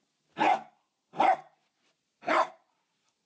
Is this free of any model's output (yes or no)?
yes